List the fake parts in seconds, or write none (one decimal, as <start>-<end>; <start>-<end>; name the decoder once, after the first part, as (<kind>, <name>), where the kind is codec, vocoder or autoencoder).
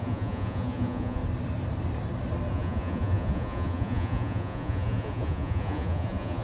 0.0-1.2 (vocoder, Vocos); 2.5-6.4